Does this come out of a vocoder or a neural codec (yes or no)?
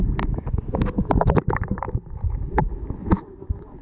no